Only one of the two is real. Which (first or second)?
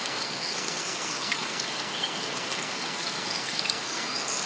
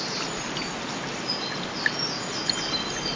second